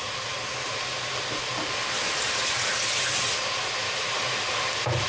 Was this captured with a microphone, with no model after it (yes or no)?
yes